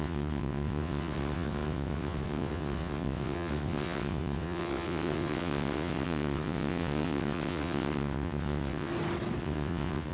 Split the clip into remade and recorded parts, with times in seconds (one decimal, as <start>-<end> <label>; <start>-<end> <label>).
0.0-8.9 remade; 8.9-9.4 recorded; 9.4-10.1 remade